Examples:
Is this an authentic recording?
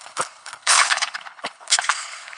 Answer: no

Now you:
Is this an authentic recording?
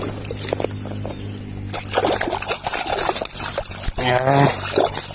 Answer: yes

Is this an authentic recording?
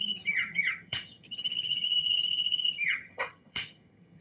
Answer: no